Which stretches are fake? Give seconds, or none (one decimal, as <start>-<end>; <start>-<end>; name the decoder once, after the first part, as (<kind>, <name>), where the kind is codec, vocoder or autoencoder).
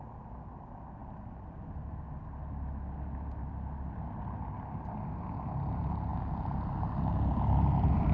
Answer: none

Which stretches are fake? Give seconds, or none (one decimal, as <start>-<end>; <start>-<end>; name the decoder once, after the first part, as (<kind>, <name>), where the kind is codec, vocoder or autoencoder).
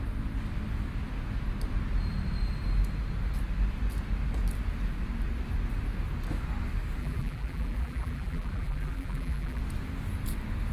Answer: 7.0-9.6 (vocoder, BigVGAN v2)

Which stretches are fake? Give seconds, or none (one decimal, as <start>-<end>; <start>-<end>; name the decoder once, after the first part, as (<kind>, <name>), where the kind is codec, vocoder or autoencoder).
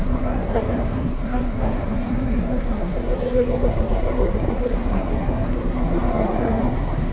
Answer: 0.0-7.1 (codec, SNAC)